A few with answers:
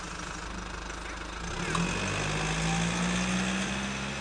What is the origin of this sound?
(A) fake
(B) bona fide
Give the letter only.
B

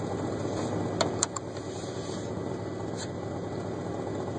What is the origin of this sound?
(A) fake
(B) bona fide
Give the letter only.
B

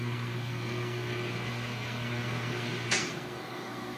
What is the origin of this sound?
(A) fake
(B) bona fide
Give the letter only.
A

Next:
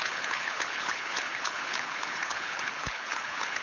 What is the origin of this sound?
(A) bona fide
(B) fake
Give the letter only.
B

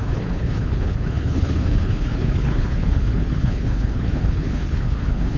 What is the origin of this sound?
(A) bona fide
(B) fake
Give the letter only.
B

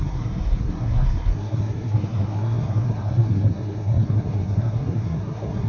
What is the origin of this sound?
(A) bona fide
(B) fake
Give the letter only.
B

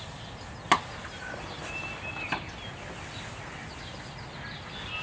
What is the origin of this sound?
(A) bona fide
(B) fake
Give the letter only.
A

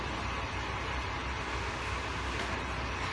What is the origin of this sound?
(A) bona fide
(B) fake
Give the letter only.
A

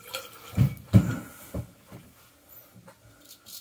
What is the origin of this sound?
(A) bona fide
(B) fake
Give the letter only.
A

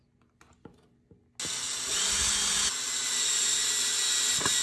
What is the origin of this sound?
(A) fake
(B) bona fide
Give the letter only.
B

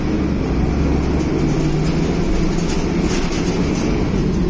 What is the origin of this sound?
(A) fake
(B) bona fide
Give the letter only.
B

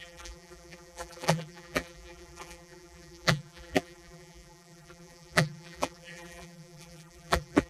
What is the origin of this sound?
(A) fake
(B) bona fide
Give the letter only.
A